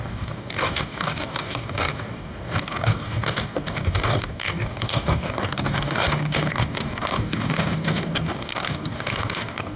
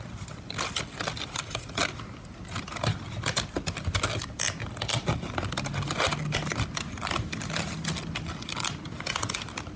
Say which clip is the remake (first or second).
first